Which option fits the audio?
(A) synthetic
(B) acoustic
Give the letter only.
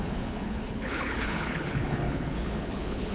A